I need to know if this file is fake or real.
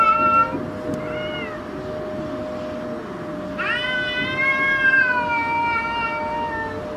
real